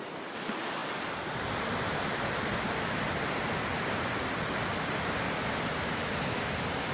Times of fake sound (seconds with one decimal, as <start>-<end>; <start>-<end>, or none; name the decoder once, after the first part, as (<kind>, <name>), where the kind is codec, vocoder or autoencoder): 0.0-4.7 (vocoder, BigVGAN v2); 5.5-6.9

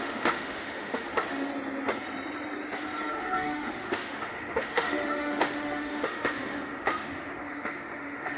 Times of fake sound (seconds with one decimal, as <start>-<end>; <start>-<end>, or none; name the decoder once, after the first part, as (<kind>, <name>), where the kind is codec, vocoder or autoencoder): 0.0-1.5 (autoencoder, DAC-VAE); 3.1-8.4